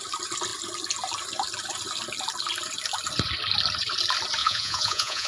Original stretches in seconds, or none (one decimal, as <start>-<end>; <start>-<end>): 0.0-4.4